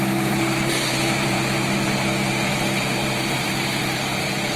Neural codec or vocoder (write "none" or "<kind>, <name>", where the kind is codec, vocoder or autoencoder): vocoder, BigVGAN v2